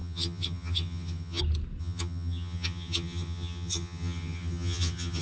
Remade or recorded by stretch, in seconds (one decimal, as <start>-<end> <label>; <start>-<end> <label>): 0.0-1.4 remade; 1.4-1.8 recorded; 1.8-5.2 remade